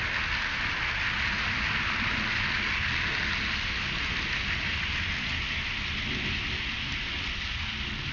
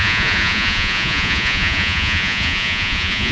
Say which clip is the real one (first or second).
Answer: first